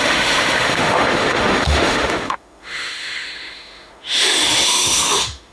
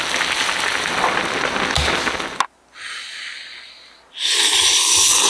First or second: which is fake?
first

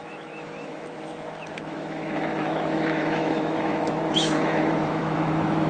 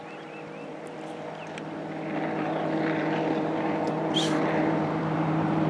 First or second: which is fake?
first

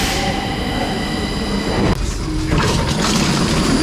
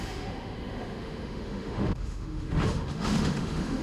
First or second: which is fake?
second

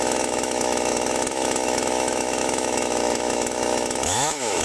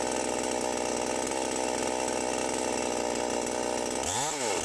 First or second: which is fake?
first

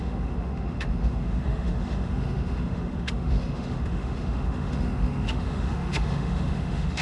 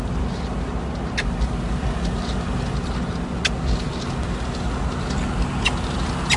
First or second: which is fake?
first